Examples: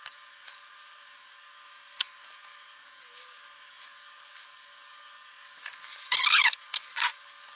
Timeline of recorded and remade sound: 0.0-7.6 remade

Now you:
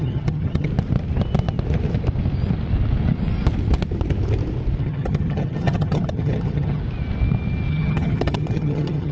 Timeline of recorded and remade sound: 0.0-0.7 remade; 0.7-4.8 recorded; 4.8-6.8 remade; 6.8-7.7 recorded; 7.7-9.1 remade